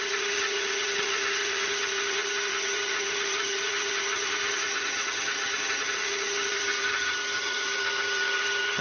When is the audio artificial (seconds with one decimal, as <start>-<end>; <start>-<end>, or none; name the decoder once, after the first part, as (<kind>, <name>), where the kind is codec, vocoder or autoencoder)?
0.0-8.8 (vocoder, HiFi-GAN)